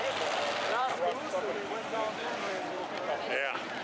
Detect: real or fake fake